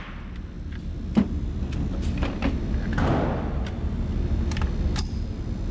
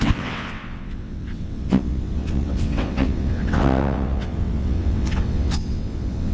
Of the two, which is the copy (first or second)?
second